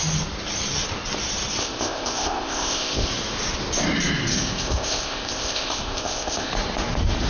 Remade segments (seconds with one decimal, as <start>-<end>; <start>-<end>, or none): 1.6-3.1; 4.3-6.5